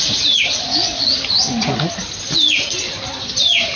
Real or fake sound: real